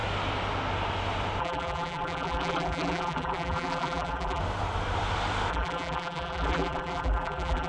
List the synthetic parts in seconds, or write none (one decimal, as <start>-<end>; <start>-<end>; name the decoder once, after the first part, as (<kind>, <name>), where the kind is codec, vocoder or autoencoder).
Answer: 1.4-4.4 (vocoder, BigVGAN v2); 5.5-7.7